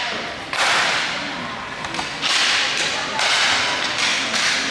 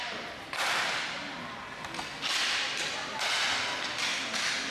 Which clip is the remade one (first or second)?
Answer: first